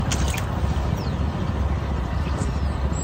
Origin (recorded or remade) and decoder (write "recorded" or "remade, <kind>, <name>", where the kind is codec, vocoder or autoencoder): recorded